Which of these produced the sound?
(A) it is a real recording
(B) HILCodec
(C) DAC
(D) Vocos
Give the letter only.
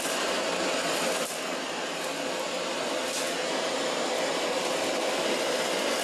A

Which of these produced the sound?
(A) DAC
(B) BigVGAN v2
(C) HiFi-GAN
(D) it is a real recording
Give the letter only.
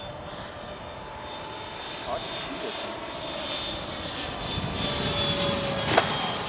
D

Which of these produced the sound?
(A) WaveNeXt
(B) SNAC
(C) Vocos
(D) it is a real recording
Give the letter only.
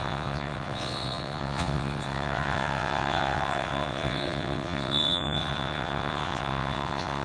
A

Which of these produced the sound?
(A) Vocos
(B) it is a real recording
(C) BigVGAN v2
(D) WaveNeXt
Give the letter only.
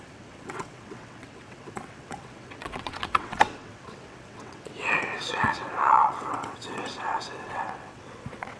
D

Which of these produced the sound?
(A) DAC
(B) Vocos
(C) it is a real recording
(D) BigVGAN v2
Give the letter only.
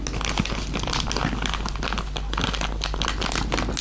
C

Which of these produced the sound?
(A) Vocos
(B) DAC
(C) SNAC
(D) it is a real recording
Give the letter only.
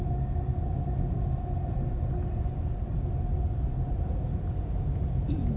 D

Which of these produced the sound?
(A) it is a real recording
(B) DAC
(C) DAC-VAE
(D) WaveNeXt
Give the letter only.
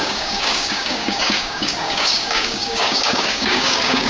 B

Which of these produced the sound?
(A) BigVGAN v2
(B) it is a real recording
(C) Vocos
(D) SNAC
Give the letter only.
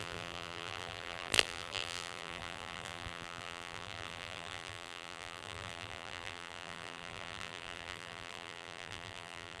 A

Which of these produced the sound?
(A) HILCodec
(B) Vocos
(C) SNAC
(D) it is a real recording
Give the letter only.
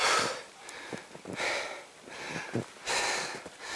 D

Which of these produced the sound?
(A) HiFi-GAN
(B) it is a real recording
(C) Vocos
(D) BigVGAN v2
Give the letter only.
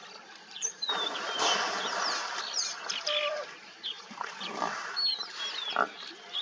D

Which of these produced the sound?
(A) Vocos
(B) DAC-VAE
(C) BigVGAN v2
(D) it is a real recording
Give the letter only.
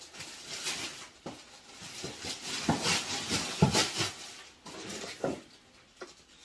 D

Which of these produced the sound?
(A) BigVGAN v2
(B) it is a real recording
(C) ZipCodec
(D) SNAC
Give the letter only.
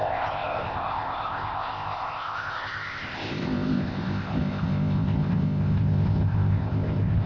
C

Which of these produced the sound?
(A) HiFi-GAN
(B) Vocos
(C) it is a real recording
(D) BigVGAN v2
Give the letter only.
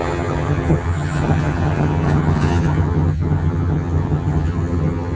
A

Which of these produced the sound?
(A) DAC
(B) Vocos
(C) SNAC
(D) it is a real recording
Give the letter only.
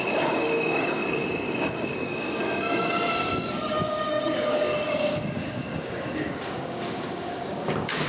A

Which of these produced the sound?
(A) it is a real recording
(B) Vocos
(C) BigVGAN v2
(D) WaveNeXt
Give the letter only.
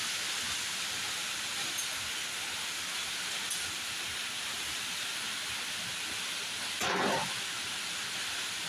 A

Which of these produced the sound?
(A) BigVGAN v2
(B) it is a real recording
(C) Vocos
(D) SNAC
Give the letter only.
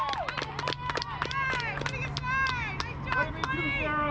B